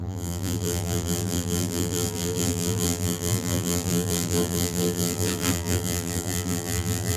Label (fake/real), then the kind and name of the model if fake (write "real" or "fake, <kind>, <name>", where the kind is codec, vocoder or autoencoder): fake, vocoder, BigVGAN v2